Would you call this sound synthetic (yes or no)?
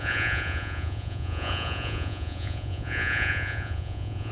yes